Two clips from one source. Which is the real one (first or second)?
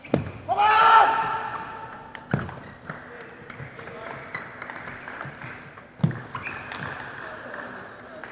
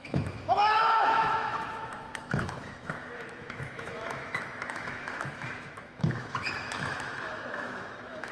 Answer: first